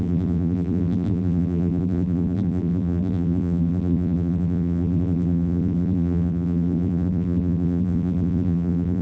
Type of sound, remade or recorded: remade